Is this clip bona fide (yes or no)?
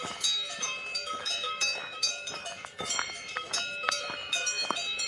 no